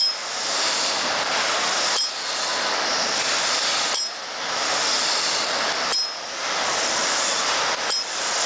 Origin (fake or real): real